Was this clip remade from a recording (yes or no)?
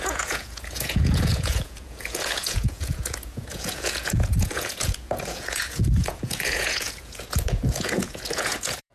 yes